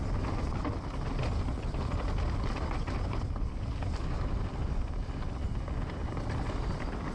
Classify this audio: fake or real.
real